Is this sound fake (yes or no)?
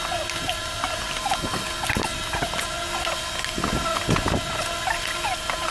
no